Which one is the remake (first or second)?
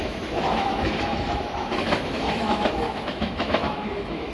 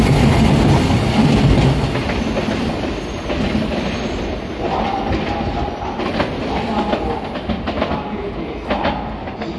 first